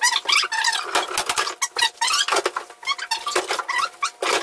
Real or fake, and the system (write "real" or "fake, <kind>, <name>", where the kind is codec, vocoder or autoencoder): real